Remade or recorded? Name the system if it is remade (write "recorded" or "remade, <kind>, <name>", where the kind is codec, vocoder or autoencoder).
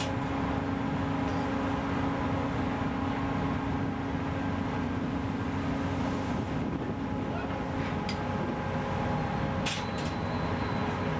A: recorded